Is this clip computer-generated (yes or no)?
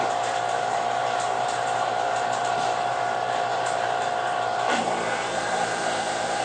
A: yes